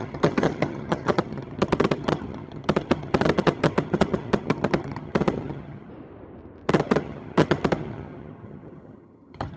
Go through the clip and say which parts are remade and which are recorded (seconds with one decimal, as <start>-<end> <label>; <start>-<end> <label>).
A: 0.0-5.9 remade; 5.9-6.7 recorded; 6.7-9.6 remade